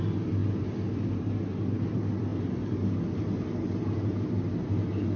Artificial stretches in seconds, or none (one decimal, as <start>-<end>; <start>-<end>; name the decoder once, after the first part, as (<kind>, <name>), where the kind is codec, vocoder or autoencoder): none